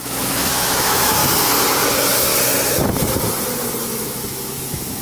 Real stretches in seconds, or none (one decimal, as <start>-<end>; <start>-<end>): 1.2-1.9; 2.3-3.8